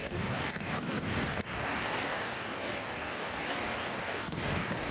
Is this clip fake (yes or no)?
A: yes